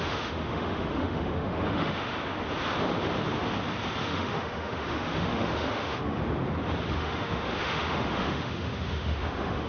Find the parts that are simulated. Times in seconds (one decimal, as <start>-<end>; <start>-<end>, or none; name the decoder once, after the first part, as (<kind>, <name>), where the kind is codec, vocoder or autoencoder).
0.0-2.1 (autoencoder, DAC-VAE); 4.0-6.2; 7.0-9.7